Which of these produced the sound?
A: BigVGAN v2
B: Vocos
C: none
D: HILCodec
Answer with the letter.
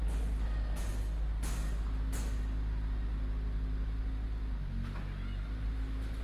C